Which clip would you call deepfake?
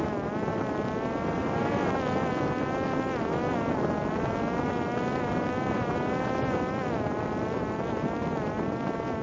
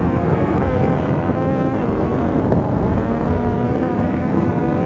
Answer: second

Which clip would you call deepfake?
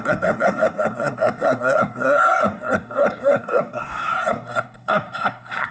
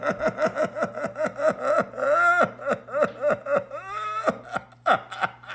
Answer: first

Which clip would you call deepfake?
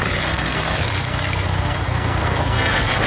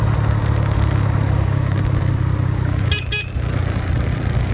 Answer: first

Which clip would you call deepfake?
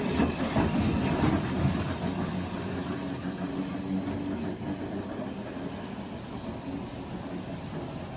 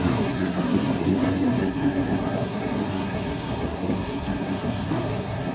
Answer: second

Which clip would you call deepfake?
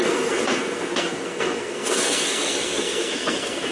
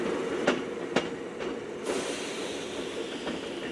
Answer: first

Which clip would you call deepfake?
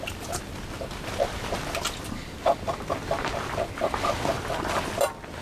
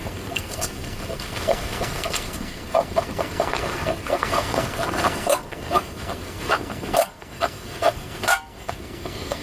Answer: second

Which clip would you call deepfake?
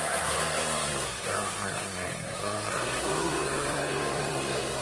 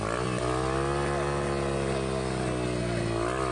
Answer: first